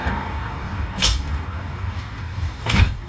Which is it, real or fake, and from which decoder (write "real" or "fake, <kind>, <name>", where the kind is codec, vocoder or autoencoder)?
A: fake, codec, DAC